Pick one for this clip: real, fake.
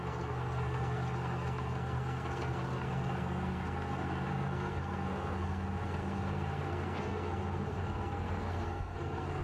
fake